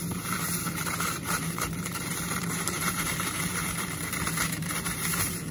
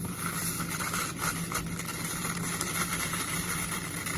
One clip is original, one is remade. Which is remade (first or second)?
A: first